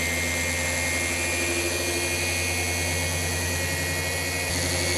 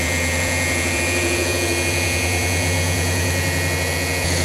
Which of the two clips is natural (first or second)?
first